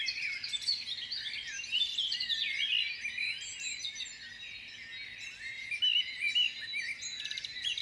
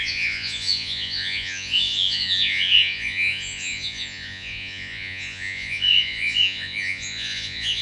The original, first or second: first